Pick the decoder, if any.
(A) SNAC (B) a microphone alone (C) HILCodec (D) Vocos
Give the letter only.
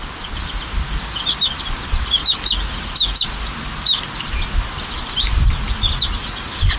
B